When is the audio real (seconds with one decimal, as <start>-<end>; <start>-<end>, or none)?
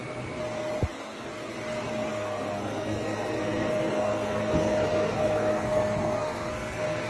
0.0-0.9; 1.3-2.1